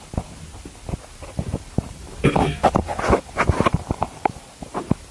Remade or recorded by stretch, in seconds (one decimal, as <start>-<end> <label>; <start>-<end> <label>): 0.0-1.5 recorded; 1.5-4.4 remade; 4.4-5.1 recorded